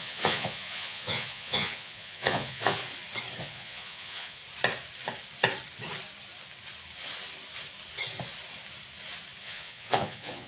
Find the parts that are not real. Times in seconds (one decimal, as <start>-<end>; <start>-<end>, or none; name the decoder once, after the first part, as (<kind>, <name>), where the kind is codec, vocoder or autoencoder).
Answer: 0.0-2.8 (vocoder, Vocos); 3.4-4.4; 9.4-10.5